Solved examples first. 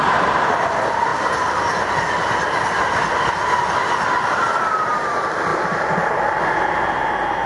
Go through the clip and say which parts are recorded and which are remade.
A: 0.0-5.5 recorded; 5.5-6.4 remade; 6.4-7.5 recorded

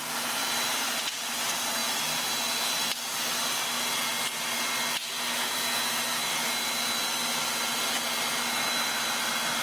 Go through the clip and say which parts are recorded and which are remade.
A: 0.0-9.6 recorded

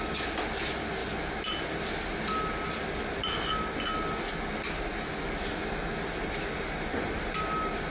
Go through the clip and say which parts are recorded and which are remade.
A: 0.0-7.9 recorded

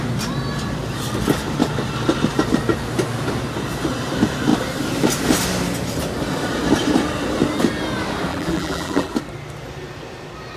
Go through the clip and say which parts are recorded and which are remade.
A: 0.0-8.3 recorded; 8.3-9.1 remade; 9.1-10.6 recorded